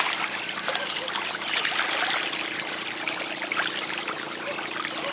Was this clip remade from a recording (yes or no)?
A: no